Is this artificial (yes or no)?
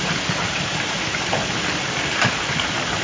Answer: no